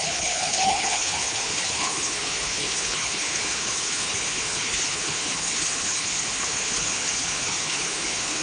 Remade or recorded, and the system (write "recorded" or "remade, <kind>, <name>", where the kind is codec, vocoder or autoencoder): remade, codec, HILCodec